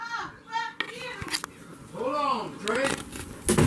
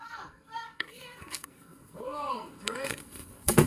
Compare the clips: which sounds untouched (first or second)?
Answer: first